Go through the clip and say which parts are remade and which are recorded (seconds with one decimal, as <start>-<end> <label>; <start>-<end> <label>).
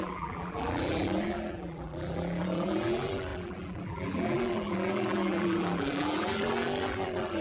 0.0-7.4 remade